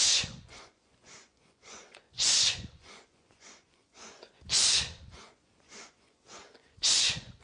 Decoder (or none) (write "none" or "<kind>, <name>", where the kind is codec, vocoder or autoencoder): vocoder, Vocos